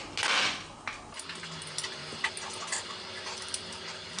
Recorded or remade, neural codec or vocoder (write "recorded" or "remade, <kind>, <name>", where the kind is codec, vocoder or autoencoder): recorded